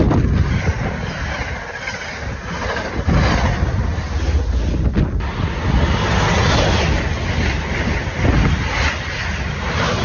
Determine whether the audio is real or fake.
real